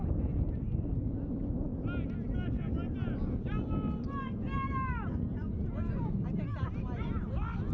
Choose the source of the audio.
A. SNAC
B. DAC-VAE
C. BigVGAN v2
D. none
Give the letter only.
D